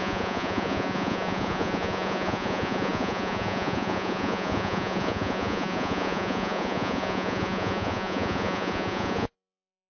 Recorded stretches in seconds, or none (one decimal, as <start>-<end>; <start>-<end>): none